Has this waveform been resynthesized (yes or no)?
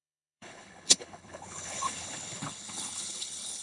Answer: yes